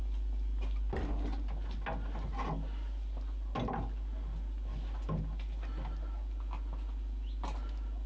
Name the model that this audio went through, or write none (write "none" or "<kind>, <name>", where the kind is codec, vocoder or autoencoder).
none